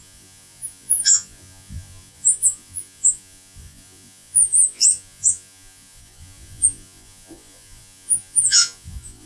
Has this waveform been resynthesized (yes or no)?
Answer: yes